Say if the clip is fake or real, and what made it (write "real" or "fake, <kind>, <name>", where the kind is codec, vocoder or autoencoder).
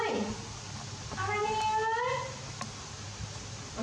real